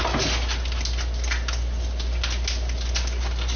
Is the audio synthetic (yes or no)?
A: no